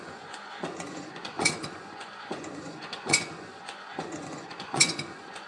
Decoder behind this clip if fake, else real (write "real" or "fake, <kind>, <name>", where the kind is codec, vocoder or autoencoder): fake, vocoder, Vocos